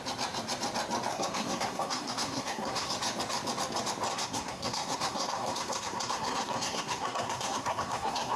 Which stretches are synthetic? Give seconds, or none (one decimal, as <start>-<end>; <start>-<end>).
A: 1.1-2.9; 4.1-8.4